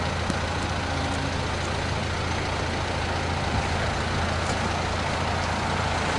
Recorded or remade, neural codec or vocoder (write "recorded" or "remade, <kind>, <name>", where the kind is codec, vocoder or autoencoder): recorded